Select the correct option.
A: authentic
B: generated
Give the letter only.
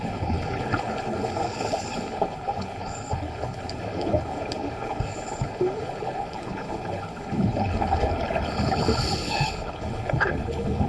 B